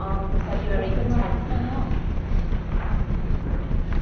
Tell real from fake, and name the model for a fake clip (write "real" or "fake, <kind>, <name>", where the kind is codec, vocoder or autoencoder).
real